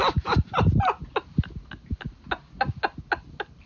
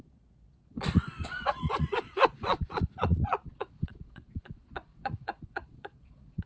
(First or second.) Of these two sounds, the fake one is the second